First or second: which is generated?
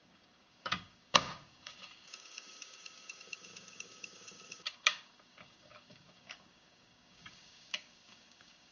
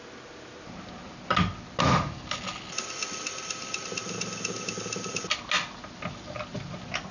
first